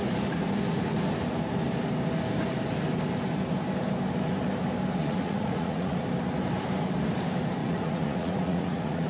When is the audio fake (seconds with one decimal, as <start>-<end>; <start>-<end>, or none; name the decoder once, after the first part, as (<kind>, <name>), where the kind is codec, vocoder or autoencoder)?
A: 5.0-6.0 (vocoder, Vocos); 7.6-9.1